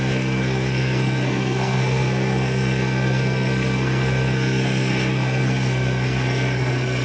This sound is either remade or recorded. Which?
remade